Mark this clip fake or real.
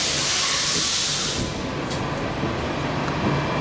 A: real